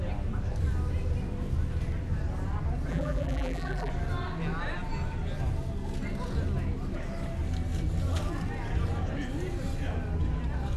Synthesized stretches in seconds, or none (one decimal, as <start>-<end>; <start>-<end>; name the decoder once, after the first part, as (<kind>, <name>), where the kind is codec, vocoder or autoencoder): 2.9-3.9 (vocoder, BigVGAN v2)